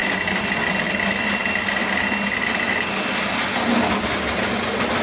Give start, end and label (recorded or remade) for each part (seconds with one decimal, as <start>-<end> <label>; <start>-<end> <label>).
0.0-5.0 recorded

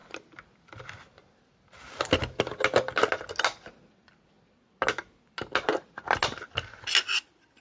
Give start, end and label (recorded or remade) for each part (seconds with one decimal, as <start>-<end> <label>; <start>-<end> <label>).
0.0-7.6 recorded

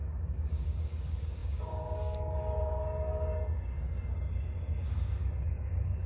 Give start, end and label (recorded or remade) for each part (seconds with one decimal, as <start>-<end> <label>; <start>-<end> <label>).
0.0-6.1 remade

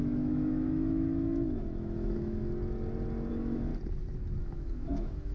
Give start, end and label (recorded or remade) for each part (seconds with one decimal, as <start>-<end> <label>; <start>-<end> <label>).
0.0-2.4 remade; 2.4-3.3 recorded; 3.3-3.7 remade; 3.7-4.4 recorded; 4.4-5.3 remade

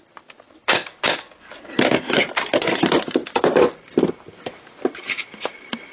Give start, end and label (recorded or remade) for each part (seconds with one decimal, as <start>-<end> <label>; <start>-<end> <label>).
0.0-5.9 recorded

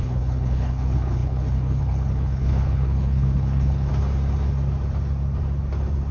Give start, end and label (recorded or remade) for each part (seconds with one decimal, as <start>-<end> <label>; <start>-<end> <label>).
0.0-3.9 remade; 3.9-6.1 recorded